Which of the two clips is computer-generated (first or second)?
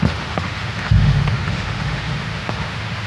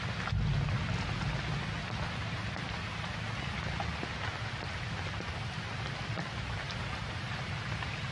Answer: first